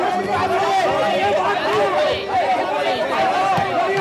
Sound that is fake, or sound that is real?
real